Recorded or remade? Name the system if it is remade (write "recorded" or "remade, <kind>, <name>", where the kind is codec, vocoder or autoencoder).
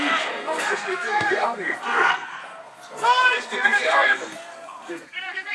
remade, codec, SNAC